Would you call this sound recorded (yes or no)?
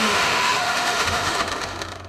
no